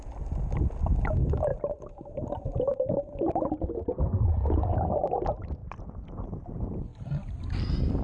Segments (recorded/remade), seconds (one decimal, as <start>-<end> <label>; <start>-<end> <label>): 0.0-1.5 recorded; 1.5-2.5 remade; 2.5-5.6 recorded; 5.6-6.3 remade; 6.3-6.9 recorded; 6.9-7.4 remade; 7.4-8.0 recorded